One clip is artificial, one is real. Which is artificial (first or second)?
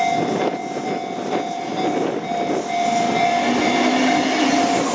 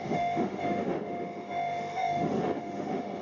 second